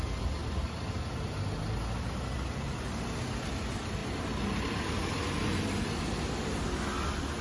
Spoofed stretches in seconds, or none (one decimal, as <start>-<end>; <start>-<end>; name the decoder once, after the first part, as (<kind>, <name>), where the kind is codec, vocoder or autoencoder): none